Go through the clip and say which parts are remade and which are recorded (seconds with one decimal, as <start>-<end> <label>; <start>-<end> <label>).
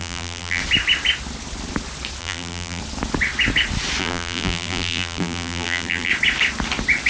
0.0-0.6 remade; 0.6-2.2 recorded; 2.2-2.8 remade; 2.8-4.0 recorded; 4.0-6.1 remade; 6.1-7.1 recorded